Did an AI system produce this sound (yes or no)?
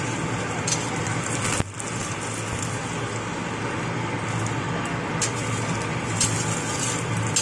no